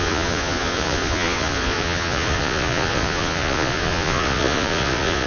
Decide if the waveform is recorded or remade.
remade